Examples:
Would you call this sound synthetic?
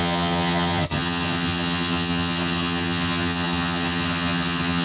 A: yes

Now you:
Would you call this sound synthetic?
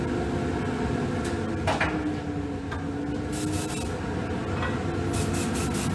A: no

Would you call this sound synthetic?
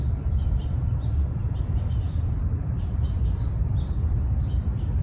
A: yes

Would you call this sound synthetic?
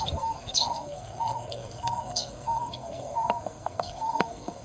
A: yes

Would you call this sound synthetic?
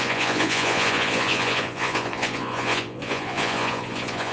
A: yes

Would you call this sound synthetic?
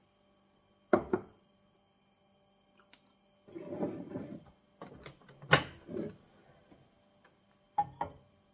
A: no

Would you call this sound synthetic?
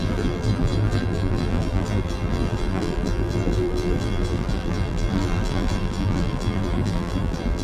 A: yes